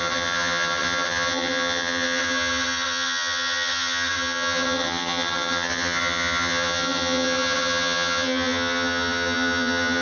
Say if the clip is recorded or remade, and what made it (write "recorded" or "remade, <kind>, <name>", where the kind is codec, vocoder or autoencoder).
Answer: remade, vocoder, HiFi-GAN